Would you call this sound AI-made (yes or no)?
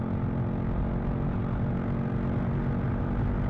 no